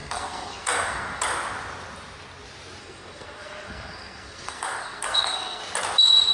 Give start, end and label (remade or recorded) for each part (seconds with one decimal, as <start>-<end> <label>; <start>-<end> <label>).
0.0-1.2 remade; 1.2-2.8 recorded; 2.8-5.6 remade; 5.6-6.3 recorded